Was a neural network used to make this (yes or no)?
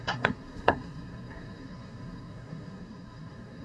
yes